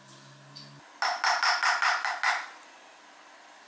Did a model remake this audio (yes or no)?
no